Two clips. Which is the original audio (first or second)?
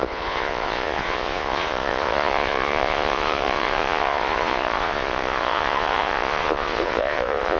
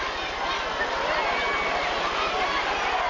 second